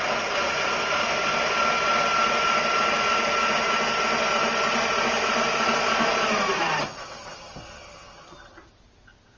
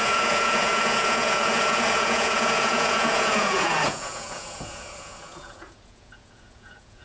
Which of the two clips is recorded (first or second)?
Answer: first